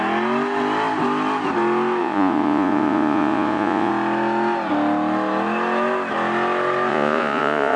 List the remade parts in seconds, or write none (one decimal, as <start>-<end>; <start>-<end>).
2.0-3.9; 6.9-7.8